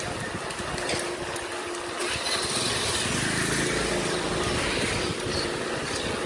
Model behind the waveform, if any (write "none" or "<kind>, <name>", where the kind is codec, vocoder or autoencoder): none